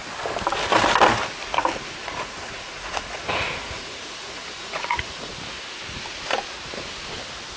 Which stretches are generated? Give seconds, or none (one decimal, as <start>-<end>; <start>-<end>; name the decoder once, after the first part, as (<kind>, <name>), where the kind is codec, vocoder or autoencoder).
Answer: 2.0-5.3 (vocoder, Vocos)